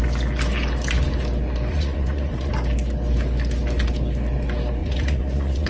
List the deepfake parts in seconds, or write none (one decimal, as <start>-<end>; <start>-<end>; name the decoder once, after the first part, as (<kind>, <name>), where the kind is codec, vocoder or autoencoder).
1.7-2.5 (vocoder, Vocos); 4.8-5.7